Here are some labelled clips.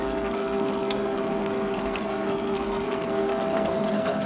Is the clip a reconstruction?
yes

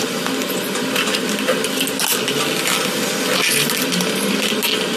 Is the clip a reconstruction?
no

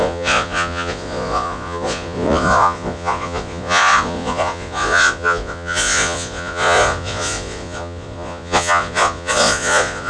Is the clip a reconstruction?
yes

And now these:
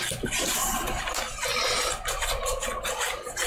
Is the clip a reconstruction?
no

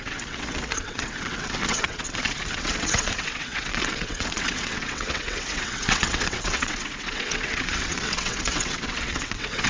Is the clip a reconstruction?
yes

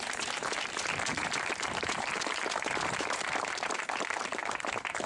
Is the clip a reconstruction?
yes